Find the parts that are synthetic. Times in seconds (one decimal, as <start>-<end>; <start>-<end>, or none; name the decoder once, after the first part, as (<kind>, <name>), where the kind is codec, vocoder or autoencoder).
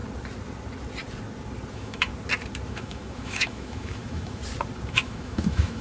1.7-2.1 (autoencoder, DAC-VAE); 2.7-4.4; 4.9-5.8